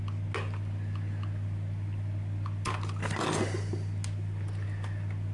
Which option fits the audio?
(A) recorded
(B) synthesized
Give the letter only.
A